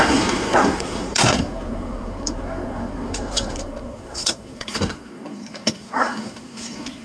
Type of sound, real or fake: fake